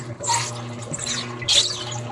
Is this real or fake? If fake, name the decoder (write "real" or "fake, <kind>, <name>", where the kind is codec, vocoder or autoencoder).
real